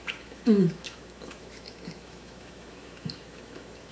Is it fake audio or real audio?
fake